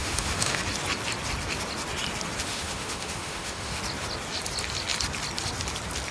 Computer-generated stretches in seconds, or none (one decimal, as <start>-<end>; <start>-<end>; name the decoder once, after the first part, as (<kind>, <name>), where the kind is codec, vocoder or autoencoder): 0.0-0.6 (autoencoder, DAC-VAE); 2.4-3.8